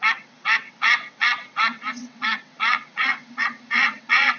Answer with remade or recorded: remade